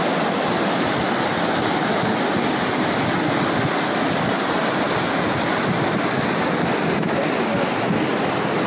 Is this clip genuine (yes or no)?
yes